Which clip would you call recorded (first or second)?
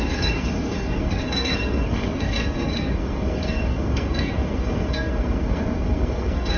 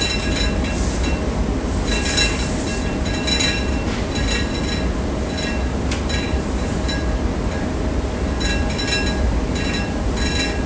second